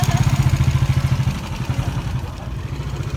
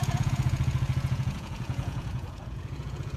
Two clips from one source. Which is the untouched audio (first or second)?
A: first